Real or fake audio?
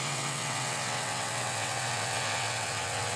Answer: fake